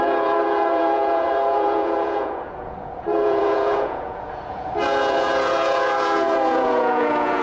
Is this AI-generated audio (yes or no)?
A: yes